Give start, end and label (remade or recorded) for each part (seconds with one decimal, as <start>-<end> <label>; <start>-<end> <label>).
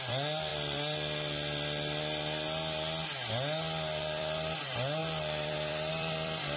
0.0-0.5 remade; 0.5-4.0 recorded; 4.0-6.6 remade